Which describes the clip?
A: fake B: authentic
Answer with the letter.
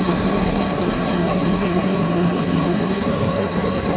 A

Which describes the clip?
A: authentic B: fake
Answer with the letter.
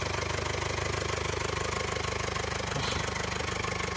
A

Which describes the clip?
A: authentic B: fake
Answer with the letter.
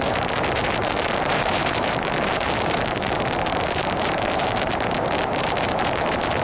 B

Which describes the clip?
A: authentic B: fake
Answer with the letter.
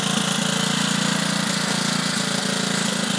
A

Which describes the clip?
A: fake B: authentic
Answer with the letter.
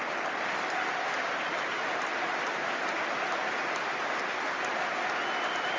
B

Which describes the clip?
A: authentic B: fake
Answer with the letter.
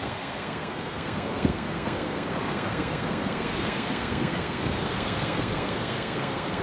B